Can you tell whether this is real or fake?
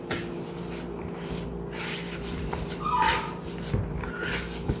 real